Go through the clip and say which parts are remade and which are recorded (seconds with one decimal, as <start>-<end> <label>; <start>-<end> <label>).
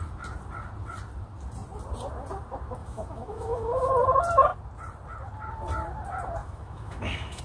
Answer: 0.0-2.8 recorded; 2.8-3.9 remade; 3.9-6.4 recorded; 6.4-7.4 remade